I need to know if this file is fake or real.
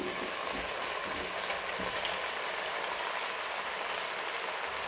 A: real